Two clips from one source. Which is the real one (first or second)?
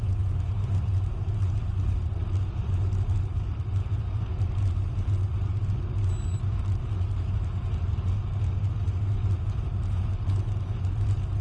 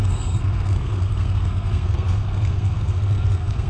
first